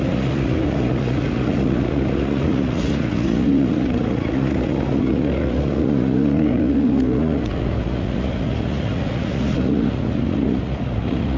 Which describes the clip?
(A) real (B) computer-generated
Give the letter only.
B